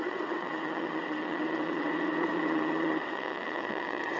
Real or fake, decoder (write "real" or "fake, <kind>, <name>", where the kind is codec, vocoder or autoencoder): fake, vocoder, WaveNeXt